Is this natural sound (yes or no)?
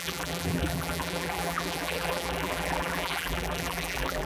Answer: no